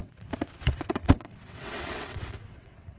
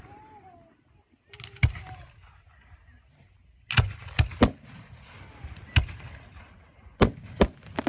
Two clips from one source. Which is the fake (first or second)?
first